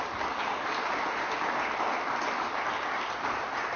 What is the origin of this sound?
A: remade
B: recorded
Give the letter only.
B